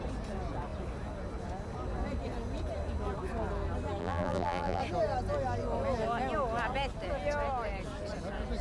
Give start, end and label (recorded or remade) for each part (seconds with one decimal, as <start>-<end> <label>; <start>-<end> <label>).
0.0-4.0 recorded; 4.0-4.8 remade; 4.8-8.6 recorded